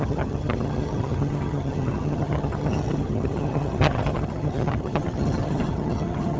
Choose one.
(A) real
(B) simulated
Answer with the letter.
B